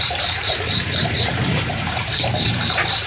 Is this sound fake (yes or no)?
yes